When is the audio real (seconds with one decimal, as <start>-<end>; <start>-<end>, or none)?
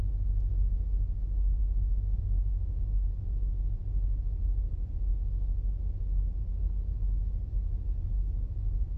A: 0.0-1.6; 3.1-9.0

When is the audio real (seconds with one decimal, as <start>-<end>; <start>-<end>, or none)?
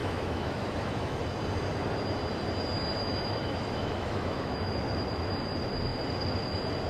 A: 1.2-3.0; 4.7-6.9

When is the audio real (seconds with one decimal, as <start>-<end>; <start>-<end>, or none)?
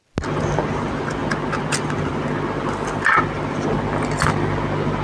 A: 0.0-5.0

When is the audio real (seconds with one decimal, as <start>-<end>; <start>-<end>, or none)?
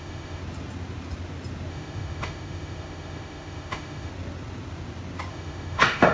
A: 0.4-1.7; 4.1-5.3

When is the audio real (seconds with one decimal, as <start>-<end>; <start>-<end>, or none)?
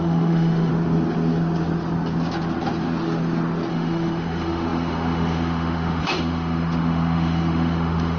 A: 0.7-3.7